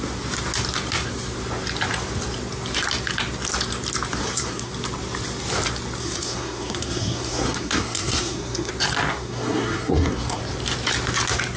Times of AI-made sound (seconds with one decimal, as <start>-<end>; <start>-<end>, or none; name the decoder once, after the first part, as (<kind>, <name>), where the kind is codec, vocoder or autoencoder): 4.2-4.7 (codec, SNAC); 6.0-8.7; 9.1-10.4